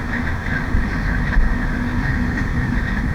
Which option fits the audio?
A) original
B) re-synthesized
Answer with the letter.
B